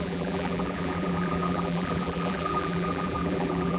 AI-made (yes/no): yes